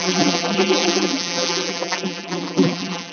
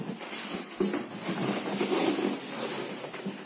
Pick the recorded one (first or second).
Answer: second